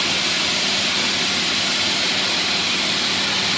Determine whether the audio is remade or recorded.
recorded